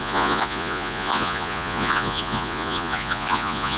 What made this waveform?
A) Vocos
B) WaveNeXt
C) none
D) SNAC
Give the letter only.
A